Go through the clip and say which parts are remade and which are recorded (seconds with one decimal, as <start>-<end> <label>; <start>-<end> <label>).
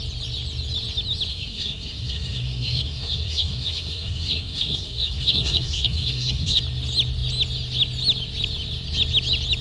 0.0-1.3 recorded; 1.3-6.6 remade; 6.6-9.6 recorded